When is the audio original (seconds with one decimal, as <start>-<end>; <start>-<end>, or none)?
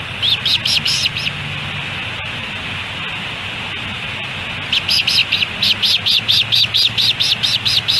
0.0-8.0